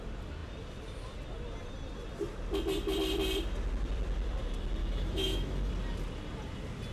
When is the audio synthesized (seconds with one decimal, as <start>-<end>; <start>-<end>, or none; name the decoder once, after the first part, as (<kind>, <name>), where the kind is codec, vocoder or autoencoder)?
4.8-5.7 (autoencoder, DAC-VAE)